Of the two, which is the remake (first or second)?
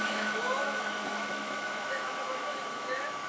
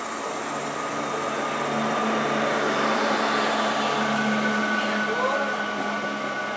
first